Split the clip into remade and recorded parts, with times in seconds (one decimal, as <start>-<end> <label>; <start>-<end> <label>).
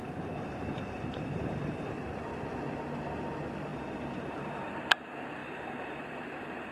0.0-1.9 remade; 1.9-3.7 recorded; 3.7-4.7 remade; 4.7-5.4 recorded; 5.4-6.0 remade; 6.0-6.7 recorded